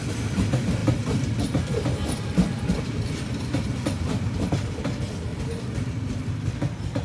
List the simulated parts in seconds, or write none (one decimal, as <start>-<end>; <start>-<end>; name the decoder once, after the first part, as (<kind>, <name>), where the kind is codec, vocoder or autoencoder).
0.8-4.5 (vocoder, BigVGAN v2); 5.3-6.1